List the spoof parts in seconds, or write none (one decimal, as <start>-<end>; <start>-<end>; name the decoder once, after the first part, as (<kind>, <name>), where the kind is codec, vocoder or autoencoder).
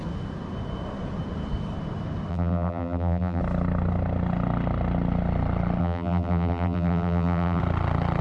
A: 2.3-3.4 (vocoder, BigVGAN v2); 5.8-7.6